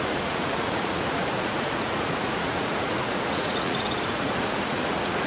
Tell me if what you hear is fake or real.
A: fake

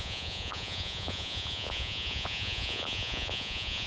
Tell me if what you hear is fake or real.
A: fake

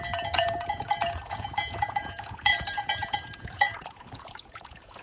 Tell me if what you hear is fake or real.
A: fake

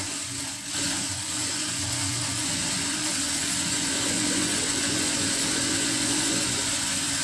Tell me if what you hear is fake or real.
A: fake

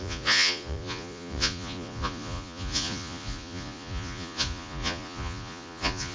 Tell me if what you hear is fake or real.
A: fake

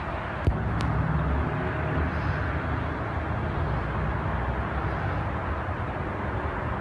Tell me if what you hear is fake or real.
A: real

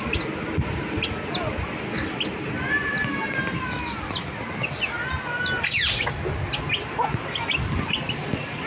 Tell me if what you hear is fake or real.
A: real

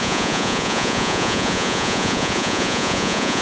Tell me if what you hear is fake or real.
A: fake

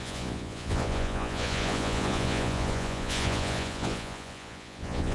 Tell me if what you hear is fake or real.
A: fake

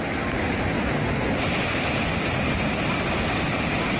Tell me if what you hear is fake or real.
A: real